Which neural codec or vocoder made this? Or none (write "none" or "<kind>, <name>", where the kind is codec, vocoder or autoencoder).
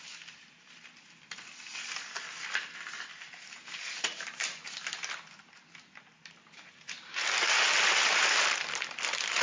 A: none